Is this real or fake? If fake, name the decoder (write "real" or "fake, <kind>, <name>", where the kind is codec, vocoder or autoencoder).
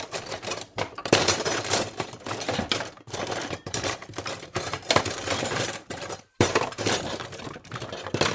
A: fake, vocoder, BigVGAN v2